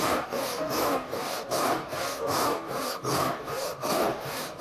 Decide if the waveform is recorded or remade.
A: remade